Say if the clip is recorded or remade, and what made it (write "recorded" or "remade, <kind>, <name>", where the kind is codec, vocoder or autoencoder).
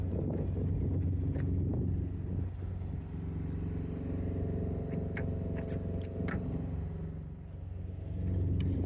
recorded